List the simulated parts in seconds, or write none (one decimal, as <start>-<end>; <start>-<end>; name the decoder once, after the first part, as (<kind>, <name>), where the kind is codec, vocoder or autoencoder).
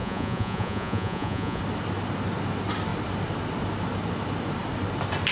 0.0-1.6 (vocoder, Vocos)